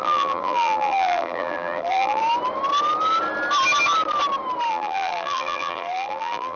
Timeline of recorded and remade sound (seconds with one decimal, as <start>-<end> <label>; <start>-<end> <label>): 0.0-2.2 remade; 2.2-4.7 recorded; 4.7-6.6 remade